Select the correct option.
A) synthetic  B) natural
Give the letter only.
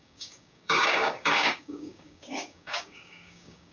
A